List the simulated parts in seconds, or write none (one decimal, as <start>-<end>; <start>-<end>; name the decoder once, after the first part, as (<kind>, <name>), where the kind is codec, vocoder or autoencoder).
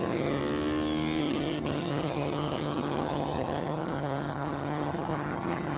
0.0-0.4 (vocoder, HiFi-GAN); 1.2-5.8